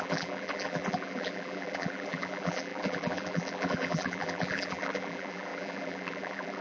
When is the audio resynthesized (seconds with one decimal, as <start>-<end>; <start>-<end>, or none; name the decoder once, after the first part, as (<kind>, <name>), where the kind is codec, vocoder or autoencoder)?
0.0-6.6 (vocoder, BigVGAN v2)